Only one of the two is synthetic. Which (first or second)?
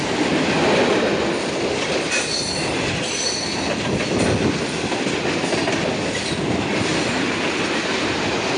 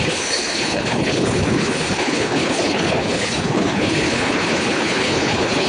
second